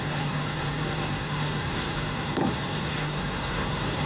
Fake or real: fake